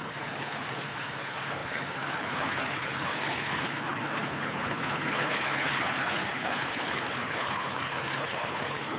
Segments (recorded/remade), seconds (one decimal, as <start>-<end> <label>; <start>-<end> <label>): 0.0-9.0 remade